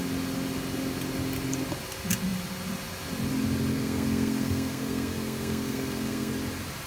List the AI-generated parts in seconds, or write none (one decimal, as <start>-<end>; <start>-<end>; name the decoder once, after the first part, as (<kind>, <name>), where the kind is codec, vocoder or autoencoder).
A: 3.7-6.3 (codec, SNAC)